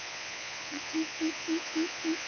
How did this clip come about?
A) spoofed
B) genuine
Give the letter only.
A